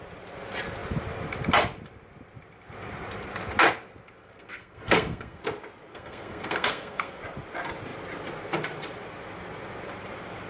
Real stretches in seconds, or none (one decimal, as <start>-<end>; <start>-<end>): 0.0-4.2; 5.4-5.9; 7.2-10.5